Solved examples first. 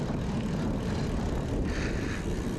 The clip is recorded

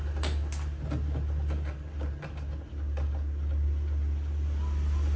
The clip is recorded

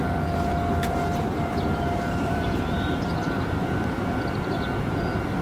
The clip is remade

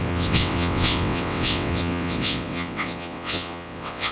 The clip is remade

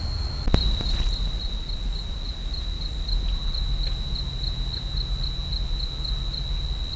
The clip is recorded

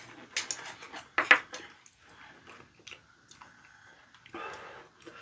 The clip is recorded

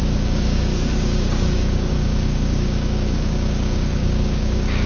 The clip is remade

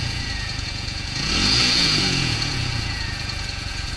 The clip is remade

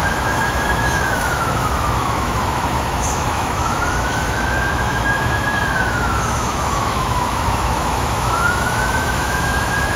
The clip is remade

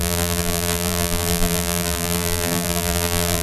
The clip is remade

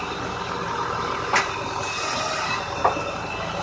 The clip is recorded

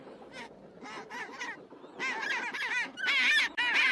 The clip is recorded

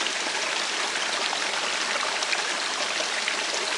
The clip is recorded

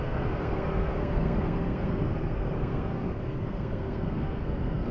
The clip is remade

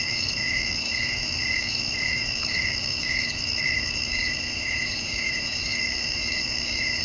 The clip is remade